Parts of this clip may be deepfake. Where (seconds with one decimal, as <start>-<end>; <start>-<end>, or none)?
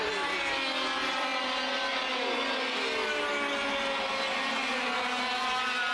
none